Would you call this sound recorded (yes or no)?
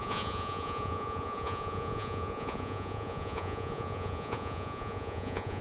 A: no